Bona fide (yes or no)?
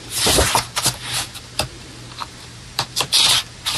no